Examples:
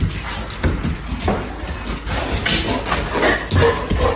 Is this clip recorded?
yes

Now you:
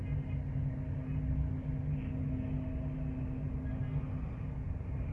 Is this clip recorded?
yes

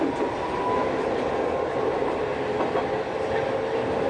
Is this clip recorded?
yes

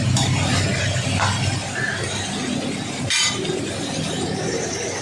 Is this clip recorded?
yes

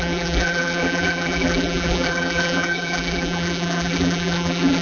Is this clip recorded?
no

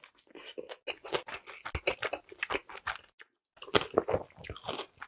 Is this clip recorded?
yes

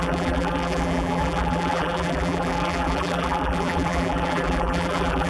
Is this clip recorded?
no